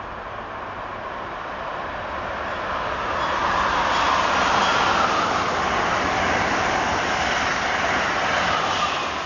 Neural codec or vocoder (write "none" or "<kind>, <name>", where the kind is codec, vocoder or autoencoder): none